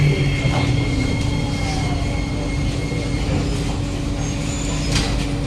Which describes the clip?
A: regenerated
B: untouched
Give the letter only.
B